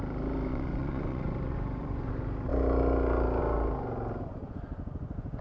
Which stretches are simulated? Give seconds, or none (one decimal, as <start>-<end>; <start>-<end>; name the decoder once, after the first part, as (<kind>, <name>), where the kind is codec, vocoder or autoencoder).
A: 0.5-2.1 (vocoder, Vocos); 4.4-5.4

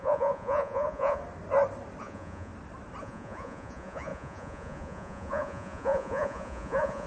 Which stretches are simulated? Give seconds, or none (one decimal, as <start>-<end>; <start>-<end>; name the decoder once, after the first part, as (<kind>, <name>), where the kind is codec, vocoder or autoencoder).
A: 0.0-1.2 (vocoder, Vocos); 2.0-2.5; 3.0-7.1

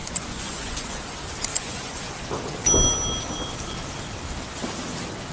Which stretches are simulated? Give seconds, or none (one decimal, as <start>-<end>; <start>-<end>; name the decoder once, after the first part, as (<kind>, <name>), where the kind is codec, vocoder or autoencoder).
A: 0.0-1.0 (vocoder, Vocos); 1.5-2.0

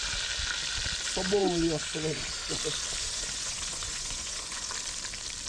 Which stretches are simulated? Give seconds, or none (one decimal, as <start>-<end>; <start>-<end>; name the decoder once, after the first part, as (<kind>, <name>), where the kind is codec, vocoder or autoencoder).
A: 1.4-2.2 (vocoder, Vocos); 3.0-4.7

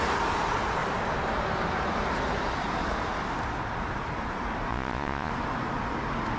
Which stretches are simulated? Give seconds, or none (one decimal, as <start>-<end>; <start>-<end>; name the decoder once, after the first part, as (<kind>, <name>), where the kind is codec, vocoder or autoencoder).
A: 4.7-5.3 (vocoder, Vocos)

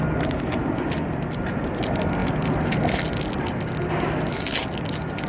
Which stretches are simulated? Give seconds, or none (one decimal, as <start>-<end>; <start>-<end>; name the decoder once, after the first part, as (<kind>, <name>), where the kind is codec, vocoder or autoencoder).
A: none

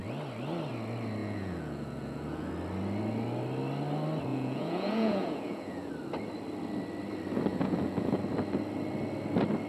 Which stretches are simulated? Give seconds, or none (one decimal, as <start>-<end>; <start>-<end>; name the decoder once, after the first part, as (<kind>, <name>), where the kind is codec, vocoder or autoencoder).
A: 1.2-2.5 (vocoder, Vocos); 4.3-5.9; 7.5-8.2

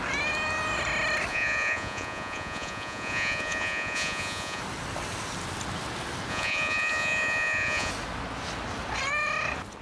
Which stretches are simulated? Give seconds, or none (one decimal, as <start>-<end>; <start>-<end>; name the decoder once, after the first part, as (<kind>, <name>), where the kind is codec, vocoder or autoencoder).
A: 1.3-4.6 (vocoder, Vocos); 6.3-7.9